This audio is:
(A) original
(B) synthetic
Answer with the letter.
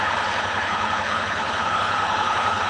B